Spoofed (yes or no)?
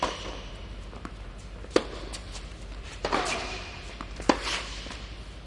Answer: yes